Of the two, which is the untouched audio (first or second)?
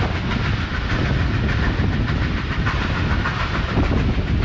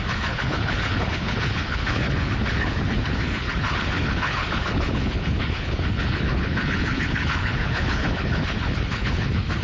first